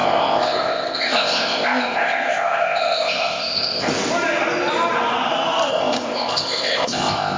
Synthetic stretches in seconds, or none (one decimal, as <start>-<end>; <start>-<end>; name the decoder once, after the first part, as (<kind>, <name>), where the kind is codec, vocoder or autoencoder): 0.0-3.9 (codec, ZipCodec); 5.7-7.4